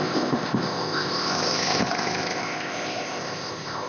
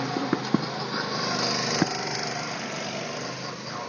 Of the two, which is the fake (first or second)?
first